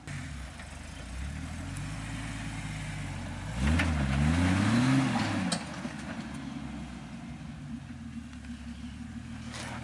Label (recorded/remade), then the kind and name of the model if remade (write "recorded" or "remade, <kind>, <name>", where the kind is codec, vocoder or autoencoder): recorded